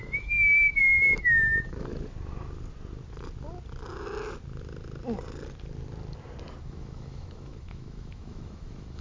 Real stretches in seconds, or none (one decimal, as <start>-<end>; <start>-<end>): 1.9-6.6